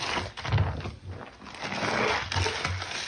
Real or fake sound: real